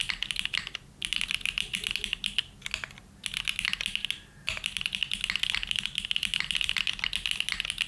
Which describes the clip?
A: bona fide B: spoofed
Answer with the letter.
A